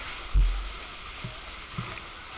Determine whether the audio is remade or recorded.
recorded